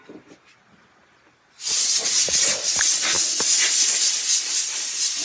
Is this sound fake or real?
real